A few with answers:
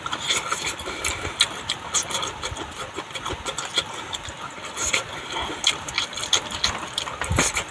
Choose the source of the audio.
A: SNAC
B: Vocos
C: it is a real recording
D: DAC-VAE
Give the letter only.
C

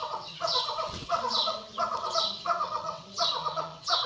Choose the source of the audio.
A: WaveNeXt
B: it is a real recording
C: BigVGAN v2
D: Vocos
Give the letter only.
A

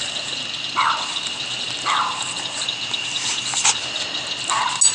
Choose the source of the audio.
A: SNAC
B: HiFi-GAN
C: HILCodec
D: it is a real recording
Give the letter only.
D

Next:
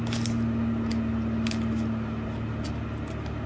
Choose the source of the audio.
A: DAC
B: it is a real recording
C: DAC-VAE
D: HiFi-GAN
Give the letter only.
B